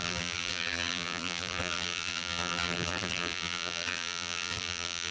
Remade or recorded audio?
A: remade